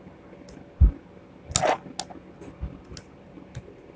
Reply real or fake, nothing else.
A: real